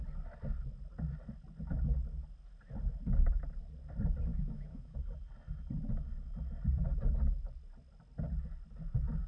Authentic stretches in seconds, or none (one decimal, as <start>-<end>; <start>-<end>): 0.0-4.3; 5.0-9.3